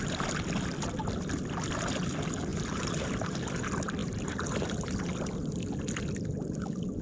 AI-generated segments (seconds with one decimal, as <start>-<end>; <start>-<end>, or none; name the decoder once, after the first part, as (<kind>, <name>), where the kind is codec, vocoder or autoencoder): 2.5-3.4 (vocoder, BigVGAN v2); 4.0-5.0